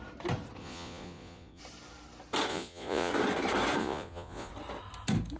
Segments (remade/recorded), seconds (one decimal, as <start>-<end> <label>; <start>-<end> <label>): 0.0-0.6 recorded; 0.6-1.6 remade; 1.6-2.5 recorded; 2.5-3.1 remade; 3.1-3.8 recorded; 3.8-4.5 remade; 4.5-5.4 recorded